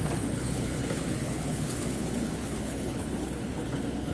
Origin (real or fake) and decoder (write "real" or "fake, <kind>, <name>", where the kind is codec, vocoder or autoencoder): fake, codec, HILCodec